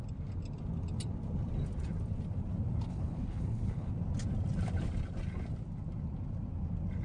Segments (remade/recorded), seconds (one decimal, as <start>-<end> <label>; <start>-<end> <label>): 0.0-2.9 recorded; 2.9-3.9 remade; 3.9-7.0 recorded

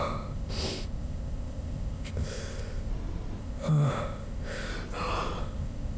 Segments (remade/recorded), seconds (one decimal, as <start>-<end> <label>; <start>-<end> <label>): 0.0-2.9 remade; 2.9-3.4 recorded; 3.4-4.7 remade; 4.7-5.4 recorded; 5.4-6.0 remade

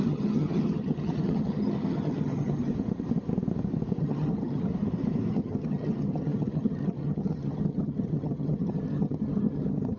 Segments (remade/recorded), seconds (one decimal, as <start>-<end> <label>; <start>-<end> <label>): 0.0-2.7 remade; 2.7-4.0 recorded; 4.0-4.7 remade; 4.7-5.3 recorded; 5.3-10.0 remade

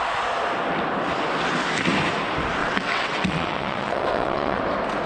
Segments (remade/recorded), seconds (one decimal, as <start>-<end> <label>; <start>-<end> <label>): 0.0-2.6 recorded; 2.6-4.6 remade; 4.6-5.1 recorded

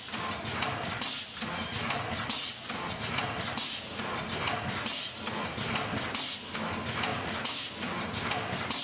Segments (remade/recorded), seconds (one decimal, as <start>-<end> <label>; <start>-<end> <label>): 0.0-7.1 recorded; 7.1-7.7 remade; 7.7-8.8 recorded